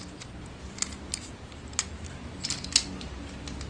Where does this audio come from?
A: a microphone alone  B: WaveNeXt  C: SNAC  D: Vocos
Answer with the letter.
A